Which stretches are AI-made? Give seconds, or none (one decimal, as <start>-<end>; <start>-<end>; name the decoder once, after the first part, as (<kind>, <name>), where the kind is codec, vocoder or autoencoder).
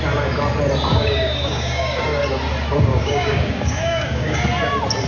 0.9-2.2 (codec, DAC); 2.9-4.4